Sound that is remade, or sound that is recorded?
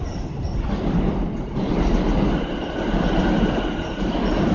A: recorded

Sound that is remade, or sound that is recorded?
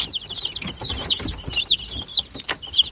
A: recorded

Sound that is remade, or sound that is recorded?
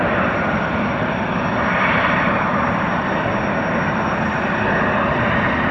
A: recorded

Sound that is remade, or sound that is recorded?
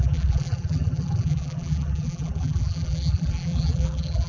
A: remade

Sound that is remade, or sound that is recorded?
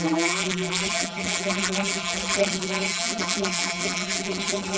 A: remade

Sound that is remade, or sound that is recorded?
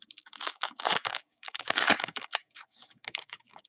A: remade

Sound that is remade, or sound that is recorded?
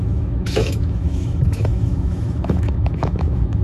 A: remade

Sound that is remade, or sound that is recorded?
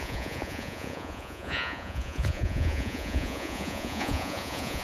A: remade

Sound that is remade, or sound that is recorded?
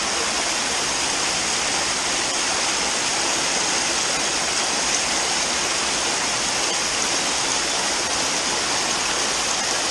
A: recorded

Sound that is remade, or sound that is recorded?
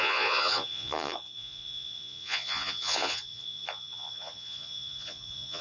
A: remade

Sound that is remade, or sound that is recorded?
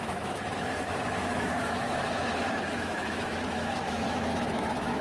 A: remade